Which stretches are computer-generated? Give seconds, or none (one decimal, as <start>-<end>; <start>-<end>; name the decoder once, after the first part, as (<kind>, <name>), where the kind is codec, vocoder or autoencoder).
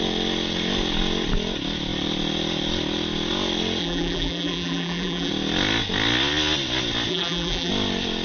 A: 3.8-5.3 (vocoder, BigVGAN v2); 7.1-7.7